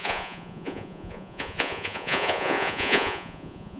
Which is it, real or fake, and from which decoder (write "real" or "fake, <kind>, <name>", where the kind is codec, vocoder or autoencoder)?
fake, vocoder, Vocos